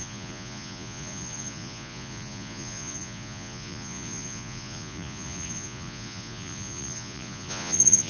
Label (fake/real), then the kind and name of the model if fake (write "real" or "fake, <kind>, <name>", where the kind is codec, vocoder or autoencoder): fake, vocoder, Vocos